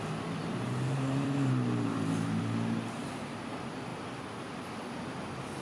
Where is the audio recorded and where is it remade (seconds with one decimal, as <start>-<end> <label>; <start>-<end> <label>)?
0.0-0.4 recorded; 0.4-2.4 remade; 2.4-5.6 recorded